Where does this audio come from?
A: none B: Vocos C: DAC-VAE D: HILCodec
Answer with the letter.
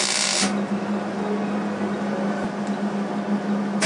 A